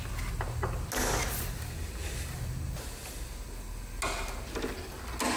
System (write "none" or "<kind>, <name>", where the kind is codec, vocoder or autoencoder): none